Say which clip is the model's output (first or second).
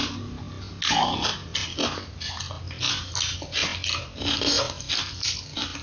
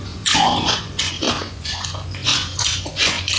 second